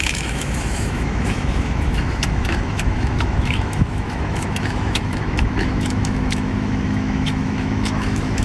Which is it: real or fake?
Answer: fake